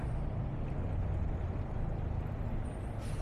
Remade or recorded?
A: recorded